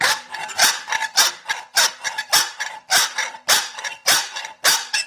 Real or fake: real